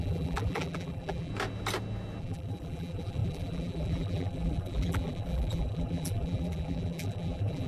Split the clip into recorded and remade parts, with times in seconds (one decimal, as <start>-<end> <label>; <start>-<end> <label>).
0.0-1.3 remade; 1.3-2.2 recorded; 2.2-7.7 remade